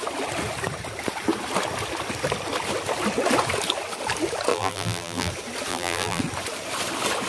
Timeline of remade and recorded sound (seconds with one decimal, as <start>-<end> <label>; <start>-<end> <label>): 0.0-4.5 recorded; 4.5-5.3 remade; 5.3-5.7 recorded; 5.7-6.2 remade; 6.2-7.3 recorded